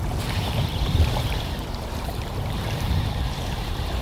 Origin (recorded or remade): remade